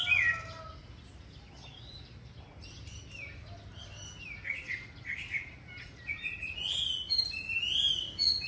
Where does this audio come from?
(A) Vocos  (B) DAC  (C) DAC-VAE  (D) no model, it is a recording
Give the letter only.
D